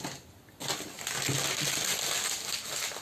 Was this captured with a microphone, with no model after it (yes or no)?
yes